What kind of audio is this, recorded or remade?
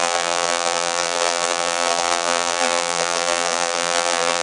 remade